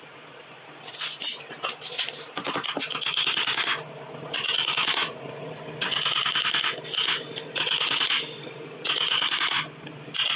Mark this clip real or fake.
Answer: real